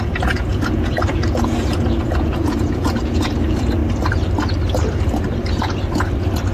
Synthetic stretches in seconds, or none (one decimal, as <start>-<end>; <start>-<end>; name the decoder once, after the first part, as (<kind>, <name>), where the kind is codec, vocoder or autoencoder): 0.0-3.8 (vocoder, Vocos)